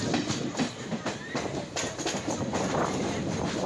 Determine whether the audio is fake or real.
real